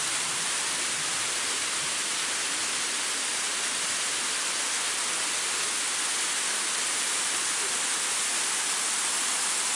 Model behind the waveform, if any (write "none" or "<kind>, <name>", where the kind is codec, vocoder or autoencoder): none